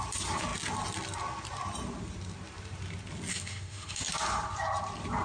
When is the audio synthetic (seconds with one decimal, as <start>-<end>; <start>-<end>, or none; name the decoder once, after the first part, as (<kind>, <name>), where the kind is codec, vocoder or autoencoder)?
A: 3.3-4.0 (autoencoder, DAC-VAE)